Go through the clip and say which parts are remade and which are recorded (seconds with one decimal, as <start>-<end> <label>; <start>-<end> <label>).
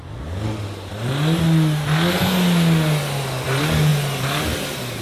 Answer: 0.0-5.0 recorded